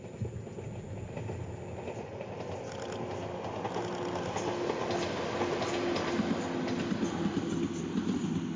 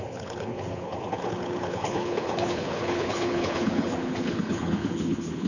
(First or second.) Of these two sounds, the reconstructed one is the second